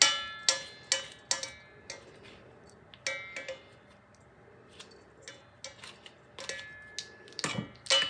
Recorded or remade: recorded